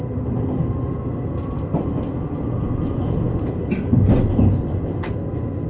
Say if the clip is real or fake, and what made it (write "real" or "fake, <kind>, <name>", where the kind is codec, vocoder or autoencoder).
real